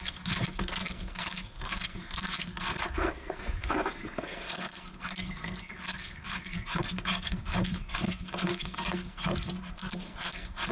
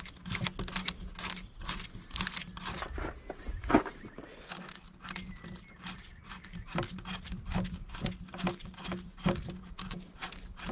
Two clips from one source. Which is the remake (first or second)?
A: first